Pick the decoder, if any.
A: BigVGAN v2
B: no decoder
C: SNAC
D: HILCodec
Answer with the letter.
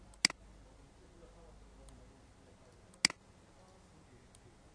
B